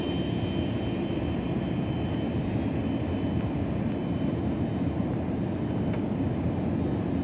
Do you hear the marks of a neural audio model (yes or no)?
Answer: no